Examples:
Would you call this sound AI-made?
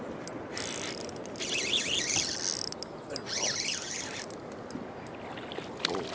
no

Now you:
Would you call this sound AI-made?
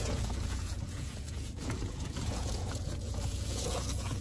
yes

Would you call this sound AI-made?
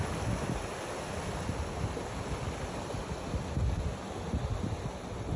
no